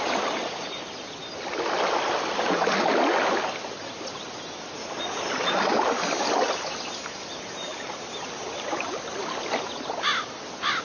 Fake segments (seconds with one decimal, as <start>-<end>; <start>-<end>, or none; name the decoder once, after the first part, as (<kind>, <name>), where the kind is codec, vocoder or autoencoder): none